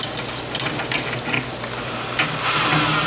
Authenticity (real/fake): real